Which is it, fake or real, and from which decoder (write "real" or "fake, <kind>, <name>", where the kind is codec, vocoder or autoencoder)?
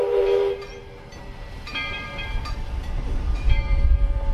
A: fake, vocoder, BigVGAN v2